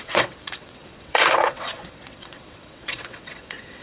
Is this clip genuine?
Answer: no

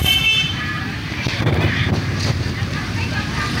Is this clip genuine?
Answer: no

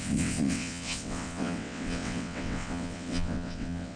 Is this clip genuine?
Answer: no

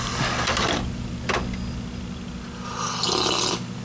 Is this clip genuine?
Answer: yes